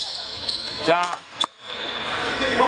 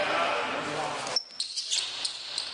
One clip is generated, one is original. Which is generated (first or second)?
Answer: first